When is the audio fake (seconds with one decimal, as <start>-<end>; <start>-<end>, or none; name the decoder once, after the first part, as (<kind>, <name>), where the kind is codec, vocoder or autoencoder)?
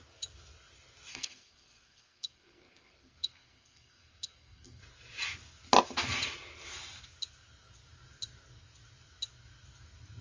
1.1-4.8 (codec, SNAC)